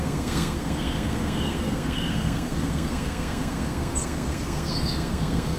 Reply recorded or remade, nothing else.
remade